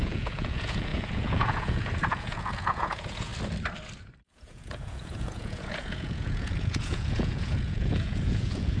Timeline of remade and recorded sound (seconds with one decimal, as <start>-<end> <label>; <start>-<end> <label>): 0.0-3.3 remade; 3.3-4.3 recorded; 4.3-8.8 remade

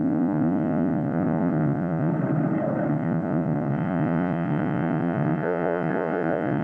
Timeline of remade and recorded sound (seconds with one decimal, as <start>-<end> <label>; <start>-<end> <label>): 0.0-2.1 remade; 2.1-2.9 recorded; 2.9-6.6 remade

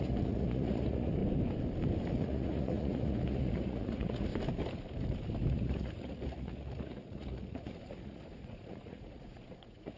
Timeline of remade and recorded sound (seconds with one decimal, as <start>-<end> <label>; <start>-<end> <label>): 0.0-1.2 remade; 1.2-2.1 recorded; 2.1-4.3 remade; 4.3-5.5 recorded; 5.5-10.0 remade

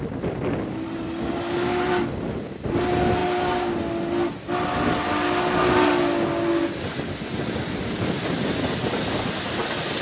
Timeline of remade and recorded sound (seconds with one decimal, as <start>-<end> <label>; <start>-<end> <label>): 0.0-10.0 recorded